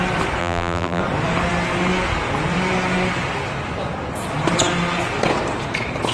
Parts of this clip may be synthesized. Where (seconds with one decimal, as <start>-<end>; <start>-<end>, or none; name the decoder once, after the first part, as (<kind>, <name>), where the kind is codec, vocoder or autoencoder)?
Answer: 0.4-1.0 (vocoder, BigVGAN v2)